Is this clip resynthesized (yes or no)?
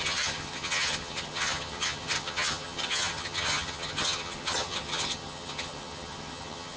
yes